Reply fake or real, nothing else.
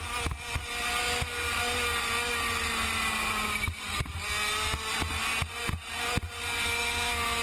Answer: real